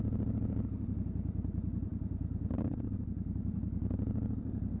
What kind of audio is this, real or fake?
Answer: fake